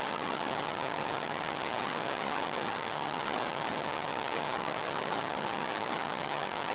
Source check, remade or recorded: remade